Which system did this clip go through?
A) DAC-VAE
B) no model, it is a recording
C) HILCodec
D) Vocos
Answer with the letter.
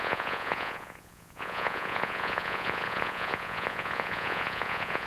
D